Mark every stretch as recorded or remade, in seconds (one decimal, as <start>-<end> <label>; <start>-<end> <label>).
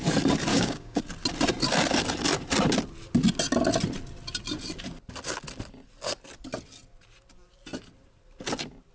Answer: 0.0-0.5 recorded; 0.5-1.0 remade; 1.0-8.9 recorded